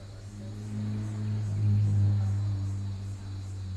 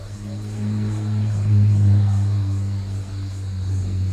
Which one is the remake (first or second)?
second